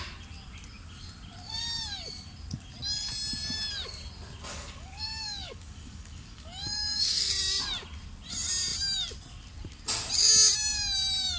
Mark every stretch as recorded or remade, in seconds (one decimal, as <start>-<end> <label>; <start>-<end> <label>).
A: 0.0-4.5 recorded; 4.5-7.3 remade; 7.3-11.4 recorded

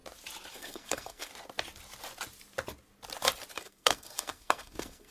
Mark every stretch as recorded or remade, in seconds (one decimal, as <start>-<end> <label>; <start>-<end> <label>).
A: 0.0-0.5 recorded; 0.5-1.3 remade; 1.3-3.5 recorded; 3.5-5.1 remade

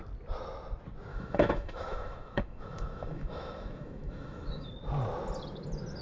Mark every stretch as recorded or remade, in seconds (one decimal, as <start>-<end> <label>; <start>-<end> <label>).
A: 0.0-1.1 recorded; 1.1-4.7 remade; 4.7-6.0 recorded

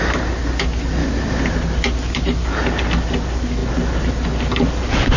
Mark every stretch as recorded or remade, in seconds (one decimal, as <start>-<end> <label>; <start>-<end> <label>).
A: 0.0-1.0 recorded; 1.0-1.5 remade; 1.5-5.2 recorded

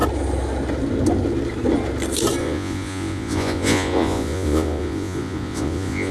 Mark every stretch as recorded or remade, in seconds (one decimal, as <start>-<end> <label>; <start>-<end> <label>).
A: 0.0-2.4 recorded; 2.4-6.1 remade

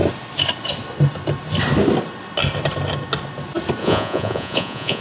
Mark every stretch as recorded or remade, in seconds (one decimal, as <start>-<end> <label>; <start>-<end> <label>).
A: 0.0-3.8 recorded; 3.8-5.0 remade